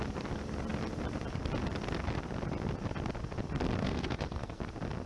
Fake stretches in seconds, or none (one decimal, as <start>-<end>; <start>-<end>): 3.8-4.6